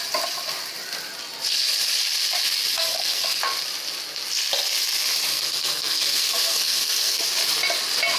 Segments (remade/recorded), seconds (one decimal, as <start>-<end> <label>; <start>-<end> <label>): 0.0-2.7 recorded; 2.7-3.4 remade; 3.4-5.3 recorded; 5.3-7.2 remade; 7.2-8.2 recorded